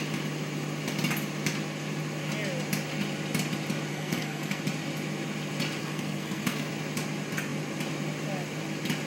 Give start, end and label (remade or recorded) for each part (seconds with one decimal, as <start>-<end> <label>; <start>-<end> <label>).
0.0-3.9 recorded; 3.9-4.6 remade; 4.6-5.8 recorded; 5.8-6.7 remade; 6.7-9.1 recorded

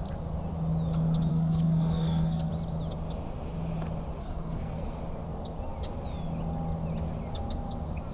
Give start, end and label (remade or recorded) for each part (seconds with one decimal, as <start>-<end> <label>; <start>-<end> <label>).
0.0-1.3 recorded; 1.3-2.5 remade; 2.5-4.2 recorded; 4.2-5.0 remade; 5.0-8.1 recorded

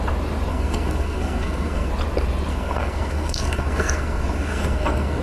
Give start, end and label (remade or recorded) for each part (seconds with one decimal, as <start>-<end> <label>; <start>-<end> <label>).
0.0-0.5 recorded; 0.5-1.9 remade; 1.9-2.5 recorded; 2.5-5.2 remade